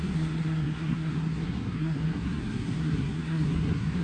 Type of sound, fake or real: fake